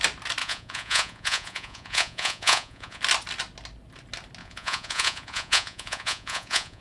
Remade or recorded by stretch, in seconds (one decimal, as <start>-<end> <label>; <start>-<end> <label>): 0.0-0.4 recorded; 0.4-3.0 remade; 3.0-4.4 recorded; 4.4-6.8 remade